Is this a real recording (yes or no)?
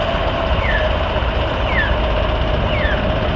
yes